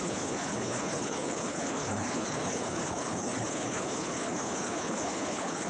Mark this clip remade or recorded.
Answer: remade